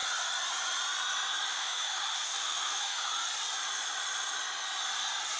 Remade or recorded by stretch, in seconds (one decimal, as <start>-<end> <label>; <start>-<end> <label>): 0.0-1.5 recorded; 1.5-3.1 remade; 3.1-5.4 recorded

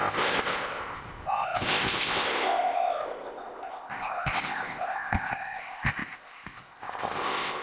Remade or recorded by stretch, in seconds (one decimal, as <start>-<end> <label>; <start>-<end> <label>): 0.0-7.6 remade

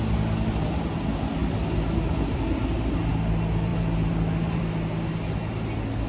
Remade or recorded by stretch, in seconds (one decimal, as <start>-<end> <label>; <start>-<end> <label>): 0.0-6.1 recorded

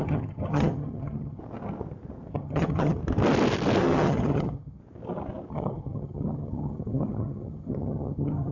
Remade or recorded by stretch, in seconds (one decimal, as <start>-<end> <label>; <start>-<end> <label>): 0.0-1.4 remade; 1.4-2.3 recorded; 2.3-3.0 remade; 3.0-3.8 recorded; 3.8-4.8 remade; 4.8-5.5 recorded; 5.5-8.5 remade

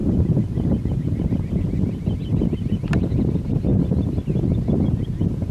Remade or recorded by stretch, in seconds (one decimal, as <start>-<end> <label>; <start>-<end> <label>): 0.0-1.6 remade; 1.6-5.5 recorded